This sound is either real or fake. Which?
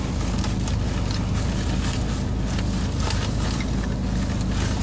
real